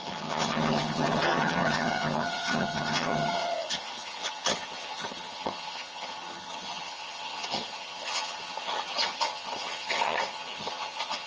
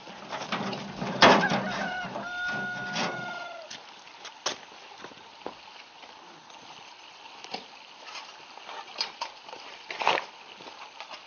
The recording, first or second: second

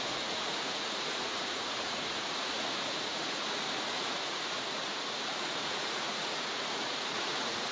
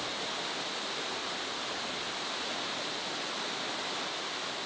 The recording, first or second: second